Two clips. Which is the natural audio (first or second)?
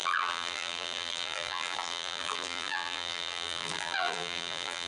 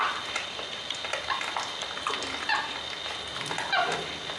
second